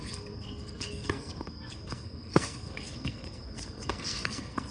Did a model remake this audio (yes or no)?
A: yes